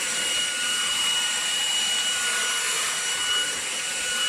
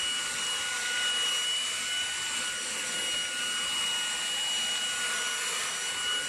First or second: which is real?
second